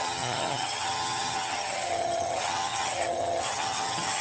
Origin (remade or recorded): remade